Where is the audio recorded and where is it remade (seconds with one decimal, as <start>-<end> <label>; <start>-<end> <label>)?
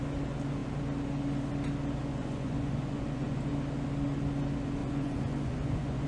0.0-2.1 recorded; 2.1-3.5 remade; 3.5-4.8 recorded; 4.8-6.1 remade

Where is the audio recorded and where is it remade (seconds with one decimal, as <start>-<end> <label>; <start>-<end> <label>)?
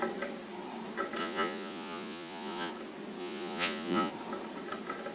0.0-1.2 recorded; 1.2-2.7 remade; 2.7-3.2 recorded; 3.2-4.1 remade; 4.1-5.1 recorded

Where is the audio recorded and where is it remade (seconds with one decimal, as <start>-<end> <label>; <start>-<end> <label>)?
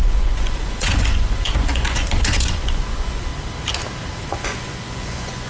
0.0-3.3 remade; 3.3-4.3 recorded; 4.3-5.5 remade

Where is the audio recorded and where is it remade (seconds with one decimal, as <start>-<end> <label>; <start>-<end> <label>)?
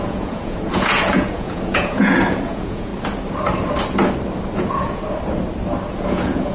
0.0-2.9 remade; 2.9-4.6 recorded; 4.6-5.0 remade; 5.0-5.9 recorded; 5.9-6.5 remade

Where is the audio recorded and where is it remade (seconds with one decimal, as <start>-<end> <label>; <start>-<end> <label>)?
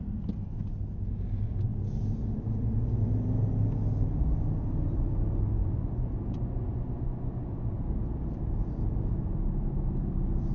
0.0-5.6 recorded; 5.6-7.7 remade; 7.7-10.5 recorded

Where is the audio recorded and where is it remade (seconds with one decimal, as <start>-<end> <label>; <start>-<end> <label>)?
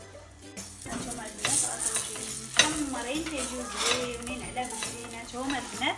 0.0-1.4 remade; 1.4-4.5 recorded; 4.5-5.0 remade; 5.0-6.0 recorded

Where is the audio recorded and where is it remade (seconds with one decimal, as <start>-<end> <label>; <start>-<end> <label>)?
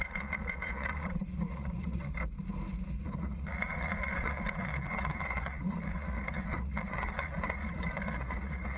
0.0-2.1 remade; 2.1-3.0 recorded; 3.0-8.8 remade